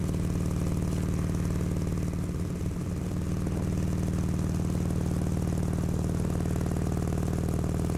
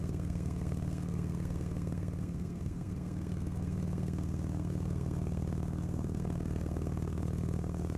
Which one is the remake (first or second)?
second